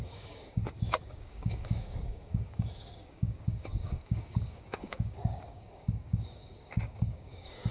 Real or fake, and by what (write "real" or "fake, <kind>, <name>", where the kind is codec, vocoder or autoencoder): fake, codec, DAC